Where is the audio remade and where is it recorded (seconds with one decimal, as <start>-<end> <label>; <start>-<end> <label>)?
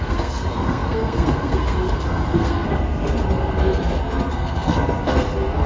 0.0-5.7 remade